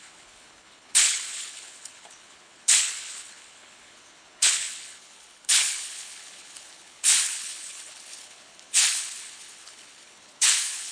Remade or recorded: remade